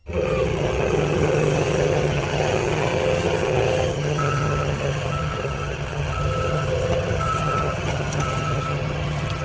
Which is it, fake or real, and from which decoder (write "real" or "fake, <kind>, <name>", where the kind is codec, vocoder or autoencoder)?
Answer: fake, vocoder, HiFi-GAN